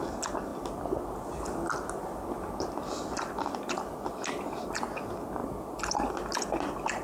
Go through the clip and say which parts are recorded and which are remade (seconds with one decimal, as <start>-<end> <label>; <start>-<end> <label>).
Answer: 0.0-5.4 recorded; 5.4-6.1 remade; 6.1-7.0 recorded